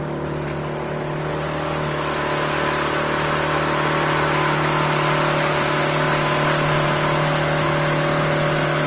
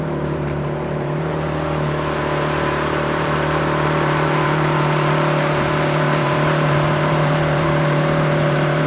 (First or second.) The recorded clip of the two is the first